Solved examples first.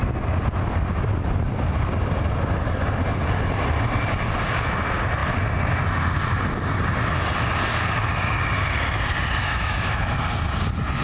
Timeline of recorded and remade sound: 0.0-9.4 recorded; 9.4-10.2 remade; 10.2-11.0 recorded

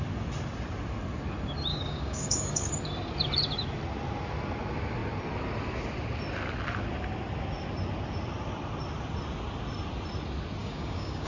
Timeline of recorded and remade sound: 0.0-1.7 recorded; 1.7-2.7 remade; 2.7-10.6 recorded; 10.6-11.3 remade

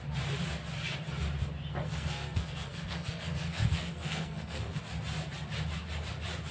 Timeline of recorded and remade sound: 0.0-1.7 recorded; 1.7-4.8 remade; 4.8-6.5 recorded